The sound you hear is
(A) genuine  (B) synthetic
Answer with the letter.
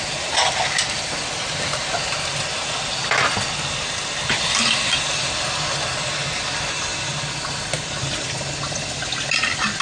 A